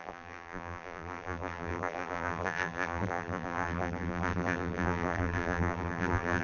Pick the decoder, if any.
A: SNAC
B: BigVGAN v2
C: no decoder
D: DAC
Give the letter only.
B